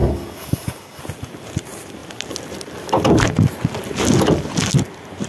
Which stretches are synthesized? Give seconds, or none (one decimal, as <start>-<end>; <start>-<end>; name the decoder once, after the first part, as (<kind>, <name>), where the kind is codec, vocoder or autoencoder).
0.0-1.0 (codec, DAC)

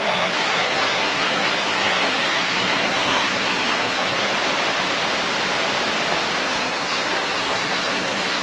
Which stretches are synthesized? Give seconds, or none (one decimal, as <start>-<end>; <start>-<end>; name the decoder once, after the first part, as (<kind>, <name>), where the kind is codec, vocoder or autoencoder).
0.0-4.3 (codec, SNAC); 6.4-8.4

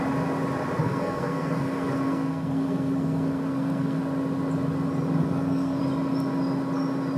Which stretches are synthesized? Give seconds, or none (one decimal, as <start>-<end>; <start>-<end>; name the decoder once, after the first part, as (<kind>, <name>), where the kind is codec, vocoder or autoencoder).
0.8-4.0 (codec, SNAC); 5.2-5.8

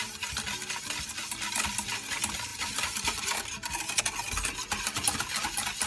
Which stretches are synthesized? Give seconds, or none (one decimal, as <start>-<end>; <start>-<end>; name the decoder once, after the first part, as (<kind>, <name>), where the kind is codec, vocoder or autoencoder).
2.5-4.0 (vocoder, BigVGAN v2)

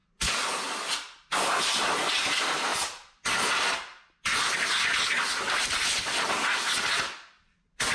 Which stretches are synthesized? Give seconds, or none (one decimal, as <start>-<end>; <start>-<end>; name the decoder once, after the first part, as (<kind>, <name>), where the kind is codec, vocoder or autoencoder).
none

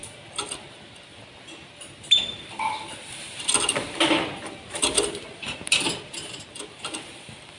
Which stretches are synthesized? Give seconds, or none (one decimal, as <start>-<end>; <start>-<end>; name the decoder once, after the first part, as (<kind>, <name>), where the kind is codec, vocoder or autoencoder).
none